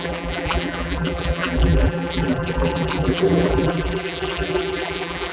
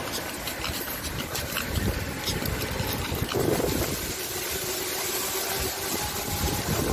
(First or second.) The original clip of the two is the second